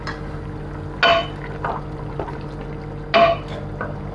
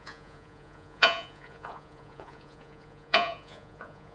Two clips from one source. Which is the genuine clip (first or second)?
first